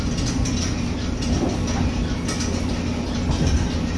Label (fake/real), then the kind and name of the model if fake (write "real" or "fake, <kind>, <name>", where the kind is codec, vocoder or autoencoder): real